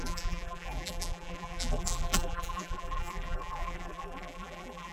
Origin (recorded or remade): remade